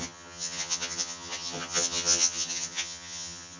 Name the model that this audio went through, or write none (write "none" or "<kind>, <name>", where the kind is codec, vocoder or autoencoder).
vocoder, HiFi-GAN